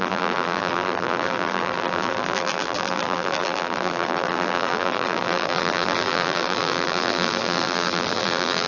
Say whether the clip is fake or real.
fake